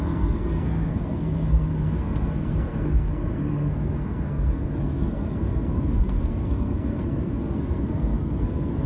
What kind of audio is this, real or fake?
fake